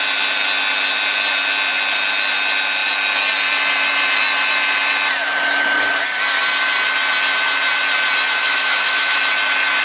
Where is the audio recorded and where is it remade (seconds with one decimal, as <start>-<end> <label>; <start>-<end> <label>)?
0.0-8.4 recorded; 8.4-9.2 remade; 9.2-9.8 recorded